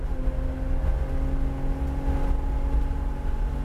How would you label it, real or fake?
real